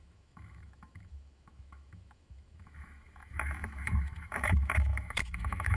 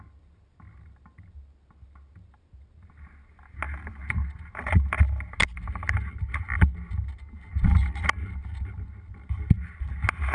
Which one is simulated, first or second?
first